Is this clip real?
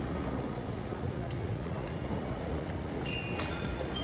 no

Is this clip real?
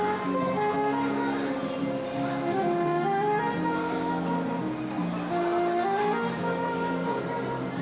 yes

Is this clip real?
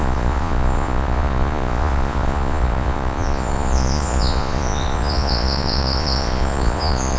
no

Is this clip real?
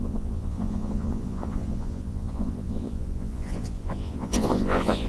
no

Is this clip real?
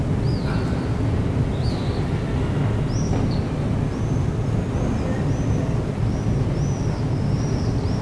yes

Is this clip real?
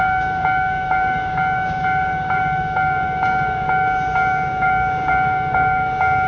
no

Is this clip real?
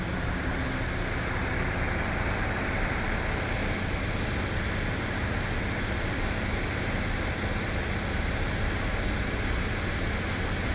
yes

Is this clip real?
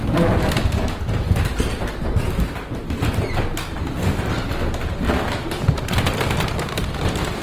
yes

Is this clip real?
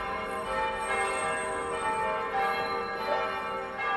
yes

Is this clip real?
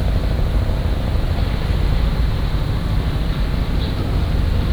yes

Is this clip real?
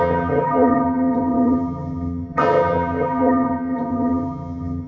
no